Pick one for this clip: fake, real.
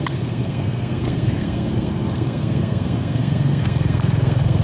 fake